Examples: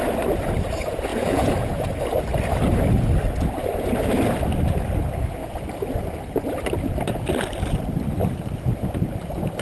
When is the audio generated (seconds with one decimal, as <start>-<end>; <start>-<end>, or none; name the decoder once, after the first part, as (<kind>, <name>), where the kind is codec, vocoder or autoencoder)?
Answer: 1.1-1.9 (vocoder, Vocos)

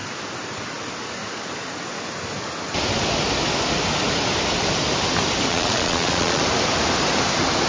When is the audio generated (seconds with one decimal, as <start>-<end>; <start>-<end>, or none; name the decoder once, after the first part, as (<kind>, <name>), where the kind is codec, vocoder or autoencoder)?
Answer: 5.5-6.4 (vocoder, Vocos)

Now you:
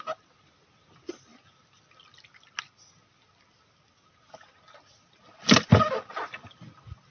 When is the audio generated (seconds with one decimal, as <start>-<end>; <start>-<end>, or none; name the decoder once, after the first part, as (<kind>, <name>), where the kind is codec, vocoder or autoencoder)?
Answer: none

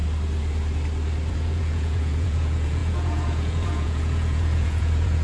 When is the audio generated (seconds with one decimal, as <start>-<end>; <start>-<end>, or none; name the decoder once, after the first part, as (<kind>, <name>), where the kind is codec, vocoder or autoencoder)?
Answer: 1.3-5.2 (vocoder, Vocos)

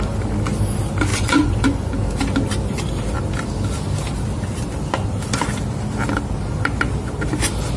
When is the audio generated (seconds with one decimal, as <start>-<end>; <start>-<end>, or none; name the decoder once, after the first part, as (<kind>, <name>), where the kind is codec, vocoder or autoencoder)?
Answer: 1.1-1.9 (vocoder, Vocos)

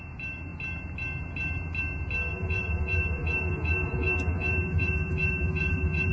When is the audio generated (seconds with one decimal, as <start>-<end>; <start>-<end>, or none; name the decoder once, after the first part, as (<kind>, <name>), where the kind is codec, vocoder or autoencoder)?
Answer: 2.3-6.1 (vocoder, Vocos)

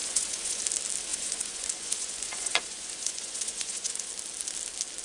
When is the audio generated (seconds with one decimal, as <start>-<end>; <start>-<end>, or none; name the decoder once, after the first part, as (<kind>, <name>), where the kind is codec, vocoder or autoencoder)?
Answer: 0.0-0.6 (vocoder, Vocos); 1.1-4.1

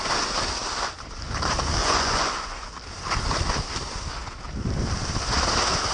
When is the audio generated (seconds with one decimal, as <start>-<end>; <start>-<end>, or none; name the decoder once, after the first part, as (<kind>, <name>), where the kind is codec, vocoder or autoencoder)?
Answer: 1.8-2.7 (vocoder, Vocos)